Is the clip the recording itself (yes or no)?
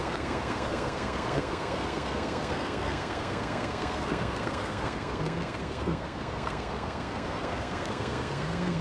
no